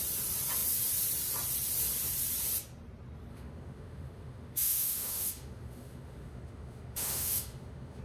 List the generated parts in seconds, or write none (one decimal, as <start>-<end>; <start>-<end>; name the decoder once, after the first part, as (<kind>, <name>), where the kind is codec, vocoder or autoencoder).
3.3-8.0 (autoencoder, DAC-VAE)